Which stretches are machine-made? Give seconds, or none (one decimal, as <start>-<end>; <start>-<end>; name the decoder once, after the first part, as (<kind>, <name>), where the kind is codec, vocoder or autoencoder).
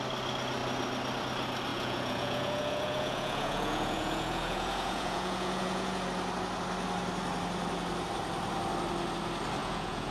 1.7-6.0 (vocoder, Vocos); 9.6-10.1